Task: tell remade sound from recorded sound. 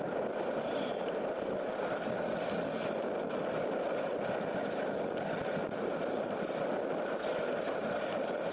recorded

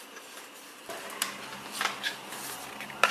recorded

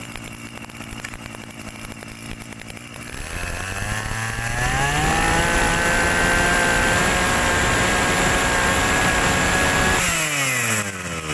recorded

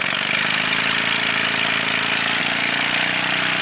recorded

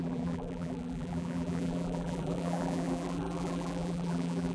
remade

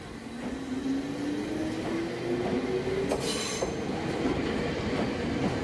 recorded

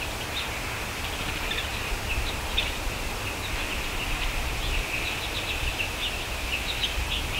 recorded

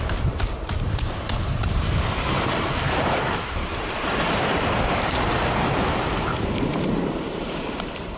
remade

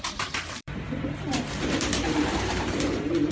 remade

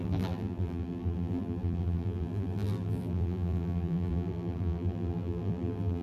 remade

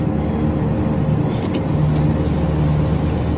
recorded